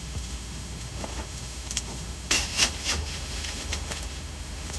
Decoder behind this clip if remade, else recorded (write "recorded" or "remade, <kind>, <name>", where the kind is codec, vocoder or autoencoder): remade, autoencoder, DAC-VAE